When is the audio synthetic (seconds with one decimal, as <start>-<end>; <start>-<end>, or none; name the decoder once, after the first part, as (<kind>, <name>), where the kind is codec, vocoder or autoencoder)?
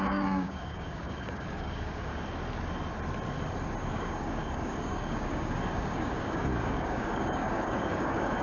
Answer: 0.0-2.1 (codec, DAC); 3.9-8.4